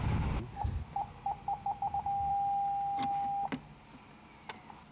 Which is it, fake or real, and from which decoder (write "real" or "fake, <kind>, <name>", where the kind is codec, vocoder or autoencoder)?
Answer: real